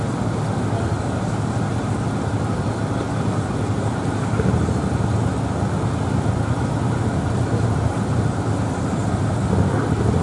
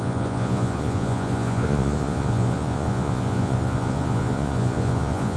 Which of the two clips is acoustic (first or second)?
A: first